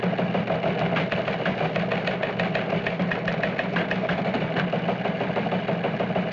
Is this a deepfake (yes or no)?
no